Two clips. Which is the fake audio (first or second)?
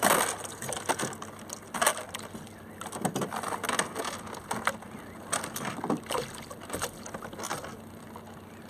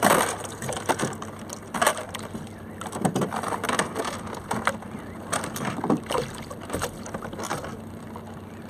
second